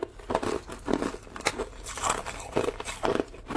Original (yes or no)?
yes